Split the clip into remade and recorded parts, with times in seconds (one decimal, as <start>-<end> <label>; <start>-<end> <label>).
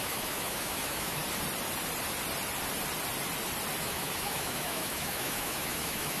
0.0-1.2 remade; 1.2-3.8 recorded; 3.8-6.2 remade